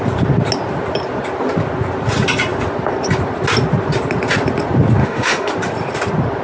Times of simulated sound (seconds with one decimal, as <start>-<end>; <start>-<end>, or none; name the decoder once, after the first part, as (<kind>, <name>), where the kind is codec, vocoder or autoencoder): 5.0-5.5 (autoencoder, DAC-VAE)